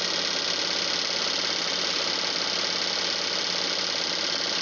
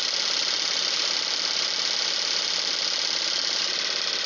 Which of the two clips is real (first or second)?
first